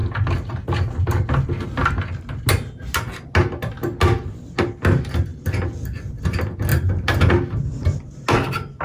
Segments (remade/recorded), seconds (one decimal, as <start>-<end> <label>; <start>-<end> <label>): 0.0-6.7 recorded; 6.7-7.3 remade; 7.3-8.8 recorded